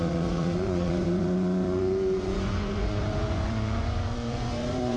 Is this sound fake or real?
fake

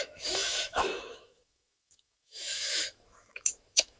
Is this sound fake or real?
fake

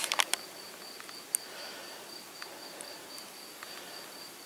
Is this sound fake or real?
real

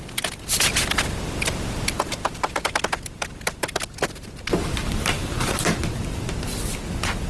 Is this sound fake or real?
real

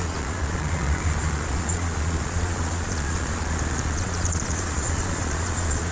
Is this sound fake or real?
fake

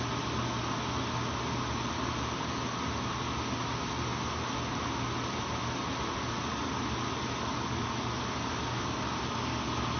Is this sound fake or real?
real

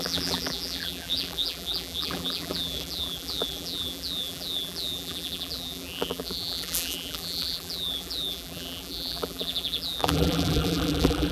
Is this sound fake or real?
fake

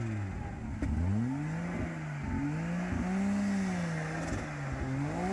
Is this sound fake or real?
real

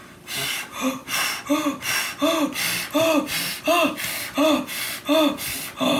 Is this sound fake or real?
real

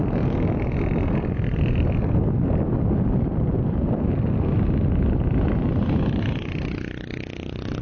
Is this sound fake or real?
real